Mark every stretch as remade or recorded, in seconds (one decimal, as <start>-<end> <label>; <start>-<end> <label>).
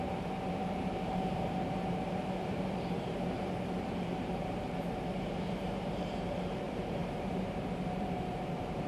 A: 0.0-8.9 remade